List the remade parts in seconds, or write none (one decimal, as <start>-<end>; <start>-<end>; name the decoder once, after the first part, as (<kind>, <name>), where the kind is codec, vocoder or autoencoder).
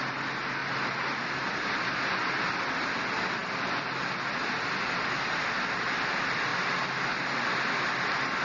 none